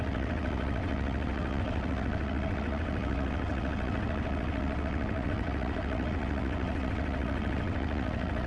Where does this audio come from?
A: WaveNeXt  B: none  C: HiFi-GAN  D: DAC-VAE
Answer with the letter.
A